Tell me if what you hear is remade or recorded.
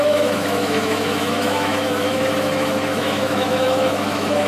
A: remade